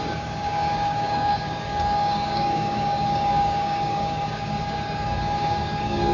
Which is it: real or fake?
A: fake